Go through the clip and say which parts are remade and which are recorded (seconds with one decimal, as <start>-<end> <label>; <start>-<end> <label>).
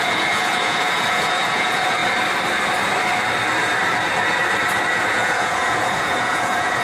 0.0-2.0 remade; 2.0-4.9 recorded; 4.9-6.8 remade